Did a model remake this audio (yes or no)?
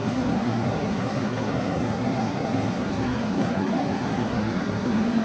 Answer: yes